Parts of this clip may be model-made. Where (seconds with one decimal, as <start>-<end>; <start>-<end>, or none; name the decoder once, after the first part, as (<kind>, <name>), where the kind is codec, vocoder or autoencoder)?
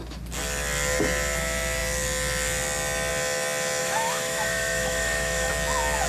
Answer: 3.8-5.5 (autoencoder, DAC-VAE)